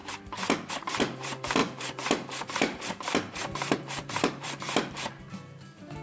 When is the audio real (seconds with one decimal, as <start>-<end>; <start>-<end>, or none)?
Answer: 0.0-0.7